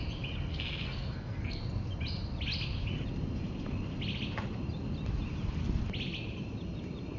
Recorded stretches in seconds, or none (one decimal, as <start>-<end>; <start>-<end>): 0.0-0.5; 1.6-7.2